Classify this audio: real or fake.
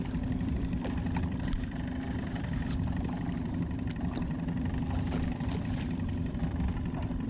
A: fake